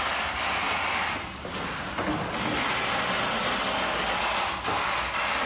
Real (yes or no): yes